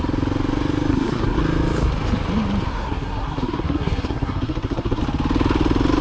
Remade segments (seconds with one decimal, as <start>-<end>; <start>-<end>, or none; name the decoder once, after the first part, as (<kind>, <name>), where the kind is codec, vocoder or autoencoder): 0.9-1.4 (codec, SNAC); 2.7-5.0